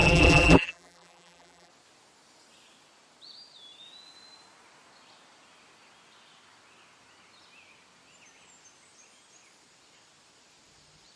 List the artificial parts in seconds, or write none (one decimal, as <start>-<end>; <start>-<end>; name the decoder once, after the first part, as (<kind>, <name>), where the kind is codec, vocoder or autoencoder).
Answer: 0.0-1.7 (vocoder, BigVGAN v2)